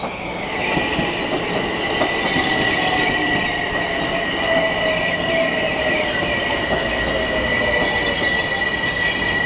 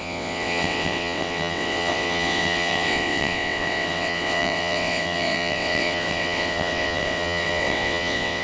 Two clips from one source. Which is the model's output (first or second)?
second